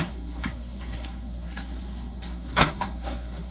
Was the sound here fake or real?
fake